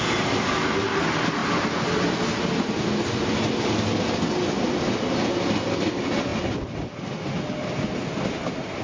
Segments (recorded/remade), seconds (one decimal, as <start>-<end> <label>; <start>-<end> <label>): 0.0-8.8 recorded